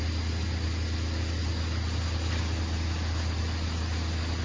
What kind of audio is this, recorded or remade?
recorded